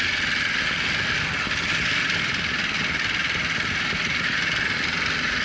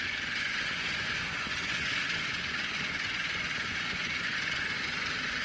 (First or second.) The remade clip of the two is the second